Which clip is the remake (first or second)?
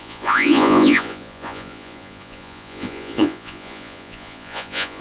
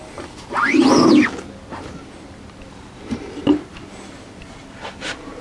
first